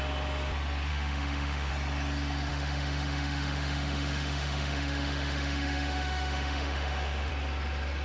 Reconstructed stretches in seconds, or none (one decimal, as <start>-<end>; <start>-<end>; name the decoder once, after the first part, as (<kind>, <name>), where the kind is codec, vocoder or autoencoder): 0.9-1.7 (autoencoder, DAC-VAE); 2.5-7.3